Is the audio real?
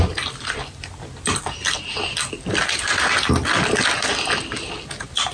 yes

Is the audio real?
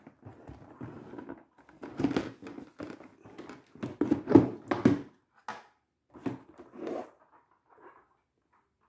yes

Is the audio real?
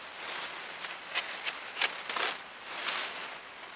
yes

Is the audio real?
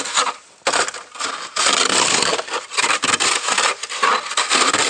yes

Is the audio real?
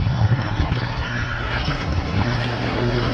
no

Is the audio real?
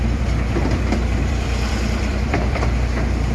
no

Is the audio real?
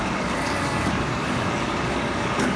no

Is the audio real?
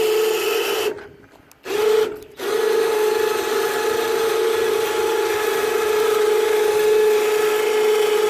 yes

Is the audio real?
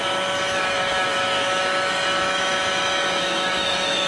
no